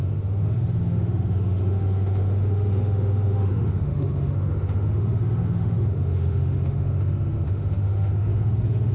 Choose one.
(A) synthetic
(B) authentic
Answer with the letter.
A